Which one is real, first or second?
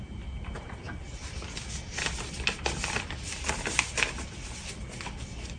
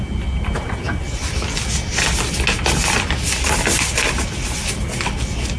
second